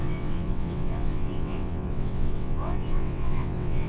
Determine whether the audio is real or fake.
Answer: fake